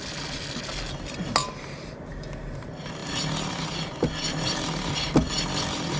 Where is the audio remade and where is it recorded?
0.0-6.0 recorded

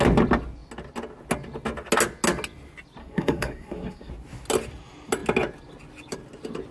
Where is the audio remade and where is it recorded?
0.0-3.0 recorded; 3.0-4.1 remade; 4.1-6.7 recorded

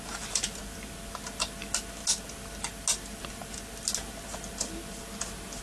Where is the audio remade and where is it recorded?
0.0-5.6 recorded

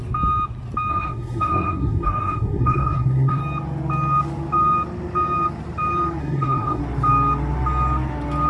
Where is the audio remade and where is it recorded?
0.0-0.9 recorded; 0.9-3.4 remade; 3.4-6.2 recorded; 6.2-6.8 remade; 6.8-8.5 recorded